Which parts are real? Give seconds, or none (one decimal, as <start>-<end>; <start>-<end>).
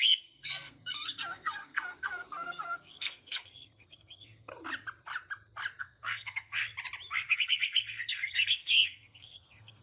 4.5-5.8; 6.6-7.3